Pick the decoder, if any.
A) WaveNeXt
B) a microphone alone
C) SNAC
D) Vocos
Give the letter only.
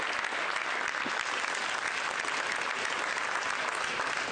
B